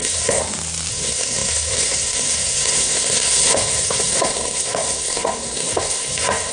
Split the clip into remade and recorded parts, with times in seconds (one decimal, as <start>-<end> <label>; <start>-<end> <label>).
0.0-0.4 remade; 0.4-0.9 recorded; 0.9-6.5 remade